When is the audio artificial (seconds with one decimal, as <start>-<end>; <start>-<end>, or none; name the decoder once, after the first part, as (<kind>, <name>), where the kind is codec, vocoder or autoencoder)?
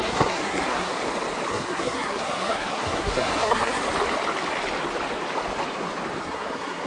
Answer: 0.0-0.9 (codec, SNAC); 1.5-3.8; 6.2-6.9